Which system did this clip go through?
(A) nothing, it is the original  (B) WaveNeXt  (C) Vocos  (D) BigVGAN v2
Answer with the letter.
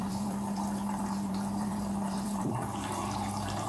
D